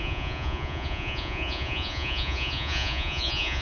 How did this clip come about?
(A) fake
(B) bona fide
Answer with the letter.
A